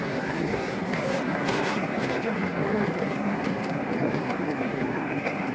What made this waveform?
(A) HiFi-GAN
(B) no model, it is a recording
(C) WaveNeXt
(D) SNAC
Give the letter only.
D